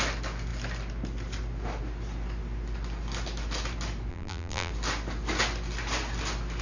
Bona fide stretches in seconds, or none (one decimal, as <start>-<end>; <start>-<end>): 0.0-4.1; 4.7-6.6